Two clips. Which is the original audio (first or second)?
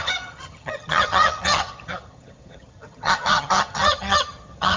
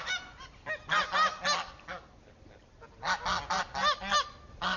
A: second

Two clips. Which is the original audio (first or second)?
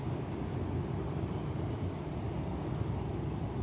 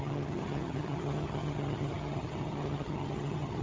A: first